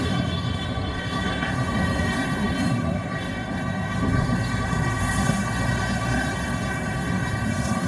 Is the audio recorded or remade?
remade